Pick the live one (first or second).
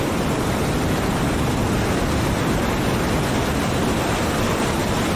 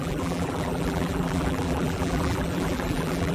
first